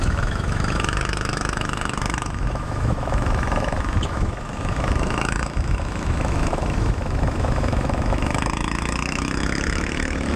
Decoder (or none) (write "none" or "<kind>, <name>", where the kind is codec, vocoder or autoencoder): autoencoder, DAC-VAE